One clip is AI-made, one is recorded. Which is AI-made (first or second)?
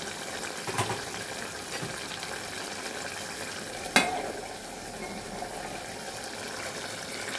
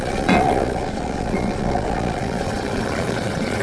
second